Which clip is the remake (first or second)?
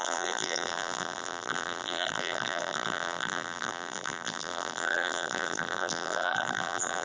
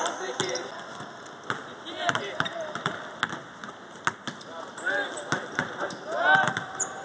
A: first